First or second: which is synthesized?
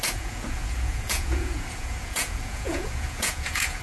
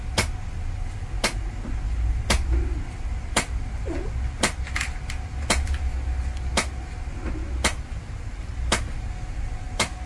first